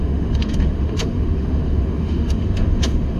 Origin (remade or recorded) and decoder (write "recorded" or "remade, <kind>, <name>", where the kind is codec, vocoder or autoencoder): remade, autoencoder, DAC-VAE